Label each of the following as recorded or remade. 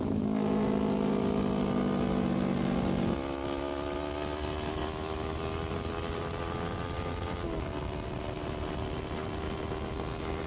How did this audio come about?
recorded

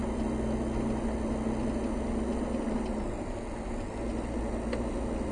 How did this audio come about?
recorded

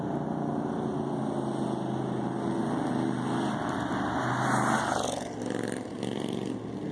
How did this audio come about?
recorded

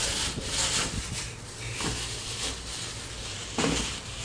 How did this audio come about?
recorded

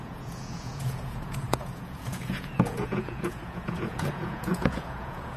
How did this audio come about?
remade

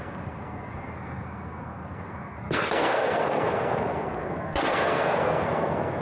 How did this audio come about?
remade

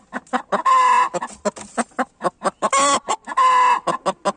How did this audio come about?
recorded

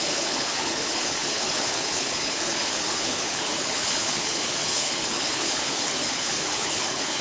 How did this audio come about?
remade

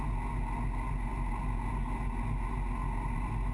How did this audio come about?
recorded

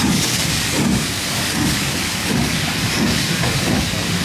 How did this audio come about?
remade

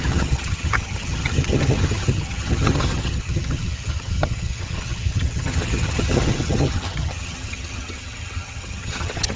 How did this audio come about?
remade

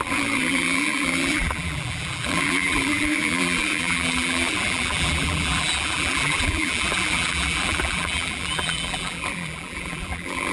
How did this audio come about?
remade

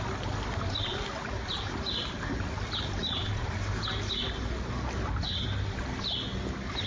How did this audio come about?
recorded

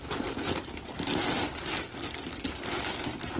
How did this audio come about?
recorded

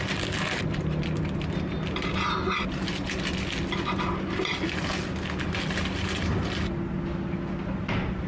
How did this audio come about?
recorded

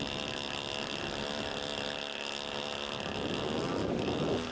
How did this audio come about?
recorded